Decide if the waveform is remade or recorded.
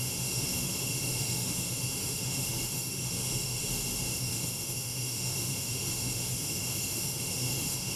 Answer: remade